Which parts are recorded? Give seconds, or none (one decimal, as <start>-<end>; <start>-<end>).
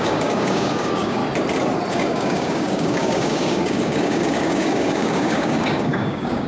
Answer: 1.2-1.9